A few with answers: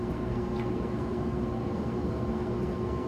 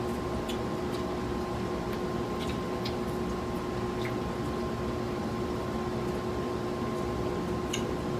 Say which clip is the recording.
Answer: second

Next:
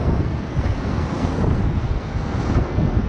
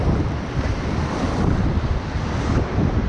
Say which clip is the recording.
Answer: second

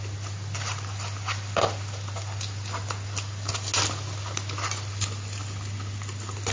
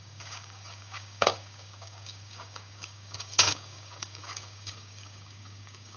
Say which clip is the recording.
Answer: first